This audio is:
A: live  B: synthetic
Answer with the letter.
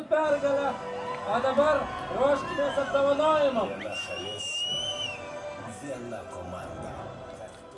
A